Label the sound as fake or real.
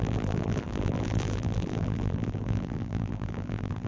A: fake